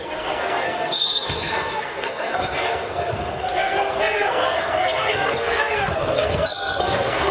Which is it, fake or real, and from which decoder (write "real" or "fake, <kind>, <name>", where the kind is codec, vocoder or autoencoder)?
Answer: fake, codec, SNAC